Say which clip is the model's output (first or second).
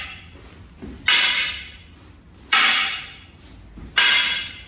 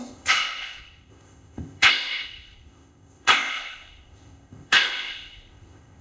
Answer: second